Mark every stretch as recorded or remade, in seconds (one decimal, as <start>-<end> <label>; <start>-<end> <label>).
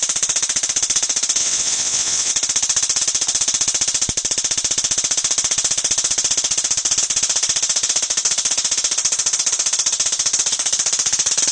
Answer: 0.0-1.4 recorded; 1.4-2.3 remade; 2.3-11.5 recorded